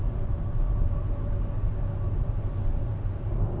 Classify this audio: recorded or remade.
recorded